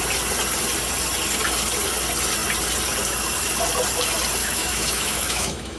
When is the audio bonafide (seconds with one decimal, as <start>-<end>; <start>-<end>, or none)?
0.0-4.4